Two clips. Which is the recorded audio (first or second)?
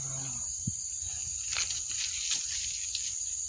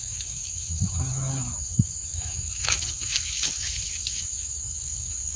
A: first